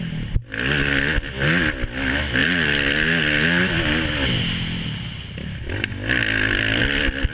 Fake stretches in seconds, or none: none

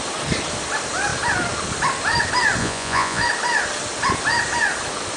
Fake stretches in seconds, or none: 2.6-3.2 (vocoder, Vocos)

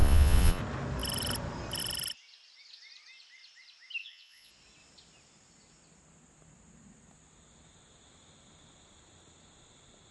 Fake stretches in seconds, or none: 0.0-0.6 (vocoder, Vocos); 4.0-4.5

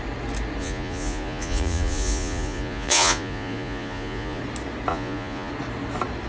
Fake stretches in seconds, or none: 0.6-4.4 (vocoder, Vocos); 4.9-5.5

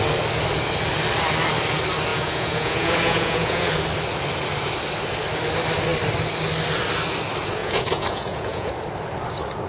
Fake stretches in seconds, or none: 2.1-3.7 (vocoder, Vocos); 7.6-8.7

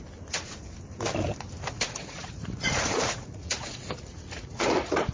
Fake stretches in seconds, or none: 2.0-5.1 (vocoder, Vocos)

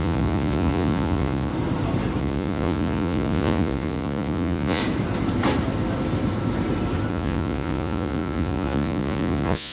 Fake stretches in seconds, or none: 0.0-1.5 (vocoder, Vocos); 2.2-4.8; 7.1-9.7